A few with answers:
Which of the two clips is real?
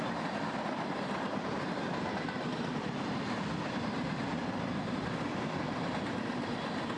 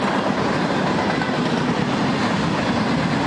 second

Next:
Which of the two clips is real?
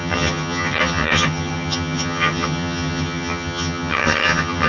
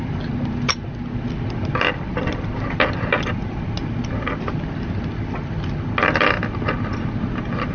second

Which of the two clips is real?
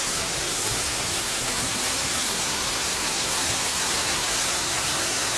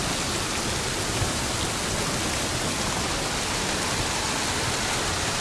second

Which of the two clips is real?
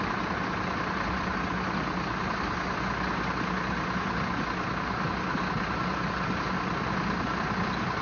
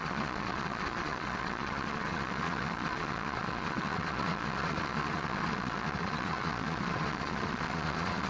first